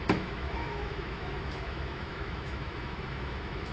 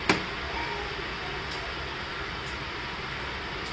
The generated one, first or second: first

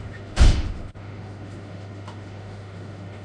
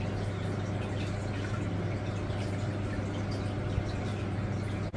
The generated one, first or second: first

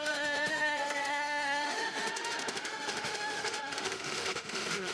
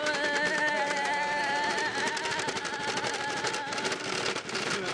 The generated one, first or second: first